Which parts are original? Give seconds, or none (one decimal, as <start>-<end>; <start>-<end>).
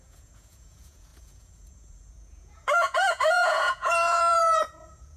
none